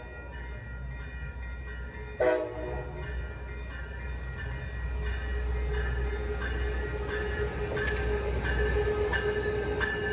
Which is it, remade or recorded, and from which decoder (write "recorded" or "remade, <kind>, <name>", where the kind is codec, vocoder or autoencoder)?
recorded